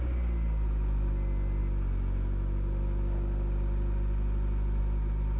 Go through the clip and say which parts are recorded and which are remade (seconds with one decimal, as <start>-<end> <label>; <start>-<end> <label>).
0.0-5.4 recorded